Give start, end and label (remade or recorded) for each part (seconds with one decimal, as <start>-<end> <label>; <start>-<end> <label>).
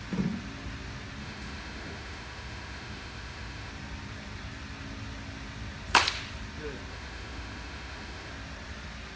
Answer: 0.0-1.2 recorded; 1.2-3.7 remade; 3.7-6.9 recorded; 6.9-8.3 remade; 8.3-9.2 recorded